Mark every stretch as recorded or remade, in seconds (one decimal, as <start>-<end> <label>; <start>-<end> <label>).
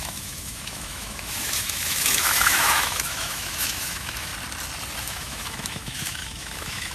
0.0-4.3 remade; 4.3-5.0 recorded; 5.0-6.9 remade